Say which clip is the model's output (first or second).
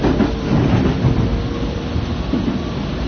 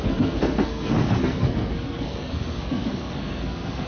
second